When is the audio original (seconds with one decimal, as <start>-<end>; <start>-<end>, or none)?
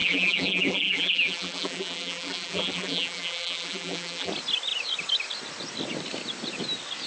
4.3-7.1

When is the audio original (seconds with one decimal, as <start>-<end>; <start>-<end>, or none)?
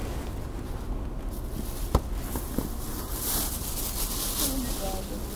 0.0-5.4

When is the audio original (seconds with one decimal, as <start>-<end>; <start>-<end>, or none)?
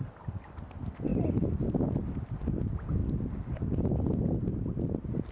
0.0-5.3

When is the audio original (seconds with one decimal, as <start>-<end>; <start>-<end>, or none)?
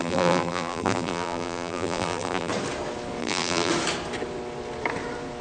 2.5-3.2; 3.7-5.4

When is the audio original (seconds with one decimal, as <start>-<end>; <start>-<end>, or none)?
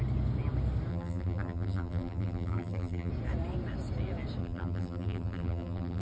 0.0-0.9; 3.1-4.4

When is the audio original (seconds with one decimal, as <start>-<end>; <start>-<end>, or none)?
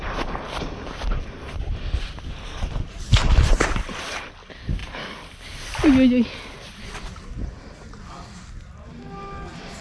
0.0-9.8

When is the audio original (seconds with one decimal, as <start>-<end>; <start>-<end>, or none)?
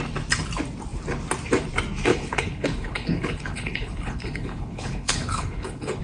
0.0-2.1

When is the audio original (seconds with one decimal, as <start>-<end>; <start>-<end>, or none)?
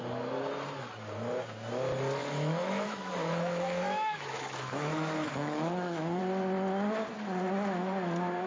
0.0-2.2; 6.2-8.5